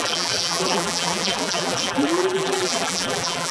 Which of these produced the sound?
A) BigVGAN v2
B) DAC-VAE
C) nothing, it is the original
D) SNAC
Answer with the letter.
A